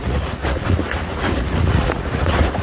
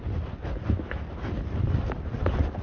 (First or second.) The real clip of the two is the second